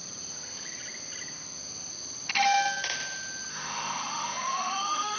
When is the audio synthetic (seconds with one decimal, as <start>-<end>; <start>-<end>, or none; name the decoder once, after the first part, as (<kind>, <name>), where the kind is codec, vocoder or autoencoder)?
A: 3.5-5.2 (autoencoder, DAC-VAE)